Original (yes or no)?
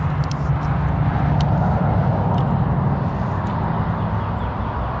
yes